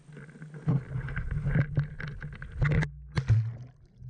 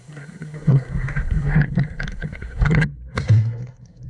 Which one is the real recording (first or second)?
first